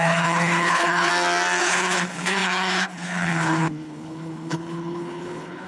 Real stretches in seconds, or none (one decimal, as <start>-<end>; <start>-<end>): 1.1-1.6